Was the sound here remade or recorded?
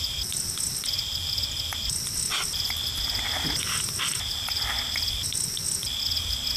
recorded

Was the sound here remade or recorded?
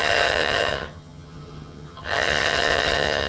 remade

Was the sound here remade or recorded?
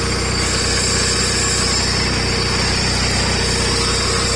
recorded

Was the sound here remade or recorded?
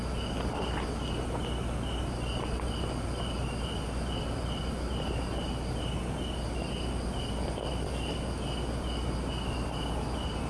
recorded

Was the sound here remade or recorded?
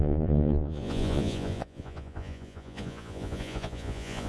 remade